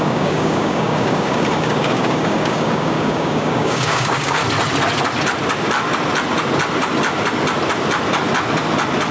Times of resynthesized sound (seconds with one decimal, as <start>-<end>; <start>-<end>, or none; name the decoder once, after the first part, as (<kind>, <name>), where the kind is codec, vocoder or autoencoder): 0.0-4.4 (codec, DAC)